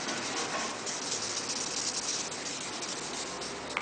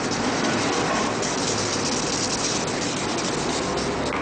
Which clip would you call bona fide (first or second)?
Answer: first